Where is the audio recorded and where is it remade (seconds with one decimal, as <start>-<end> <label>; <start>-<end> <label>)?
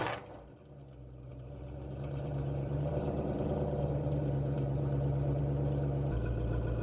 0.0-1.3 recorded; 1.3-5.4 remade; 5.4-6.8 recorded